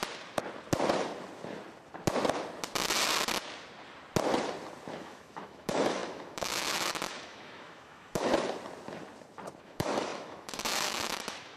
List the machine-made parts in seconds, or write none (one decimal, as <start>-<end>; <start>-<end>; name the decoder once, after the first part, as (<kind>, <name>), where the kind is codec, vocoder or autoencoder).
5.0-8.3 (autoencoder, DAC-VAE); 9.6-11.6